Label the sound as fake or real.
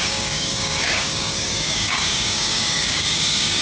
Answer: fake